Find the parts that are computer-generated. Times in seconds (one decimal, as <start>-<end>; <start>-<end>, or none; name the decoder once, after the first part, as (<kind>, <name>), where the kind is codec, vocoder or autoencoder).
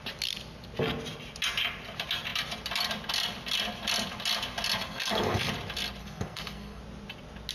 4.8-5.5 (codec, SNAC); 6.0-6.8